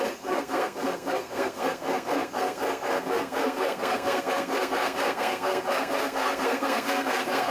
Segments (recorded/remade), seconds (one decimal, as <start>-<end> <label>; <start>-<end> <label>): 0.0-7.5 remade